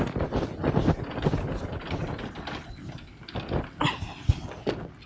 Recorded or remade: recorded